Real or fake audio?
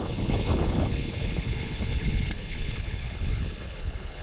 fake